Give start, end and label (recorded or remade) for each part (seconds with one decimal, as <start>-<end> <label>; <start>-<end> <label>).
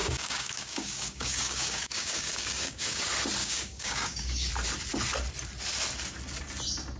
0.0-3.0 remade; 3.0-3.4 recorded; 3.4-4.5 remade; 4.5-7.0 recorded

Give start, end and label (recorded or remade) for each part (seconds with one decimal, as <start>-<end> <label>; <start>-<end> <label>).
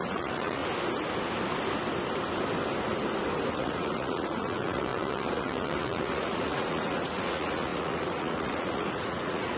0.0-0.6 remade; 0.6-3.5 recorded; 3.5-9.6 remade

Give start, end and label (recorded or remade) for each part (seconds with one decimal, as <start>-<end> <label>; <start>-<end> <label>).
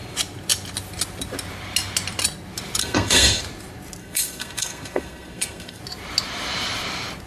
0.0-2.8 recorded; 2.8-3.4 remade; 3.4-4.0 recorded; 4.0-5.8 remade; 5.8-7.3 recorded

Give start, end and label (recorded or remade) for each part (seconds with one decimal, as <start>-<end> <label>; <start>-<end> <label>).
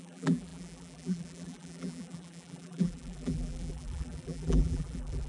0.0-5.3 remade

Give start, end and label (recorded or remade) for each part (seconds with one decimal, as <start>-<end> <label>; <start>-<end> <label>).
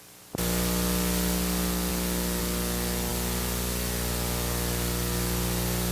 0.0-5.9 recorded